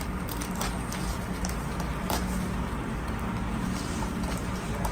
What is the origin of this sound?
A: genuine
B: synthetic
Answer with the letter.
A